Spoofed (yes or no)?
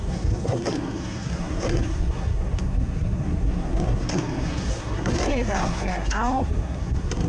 yes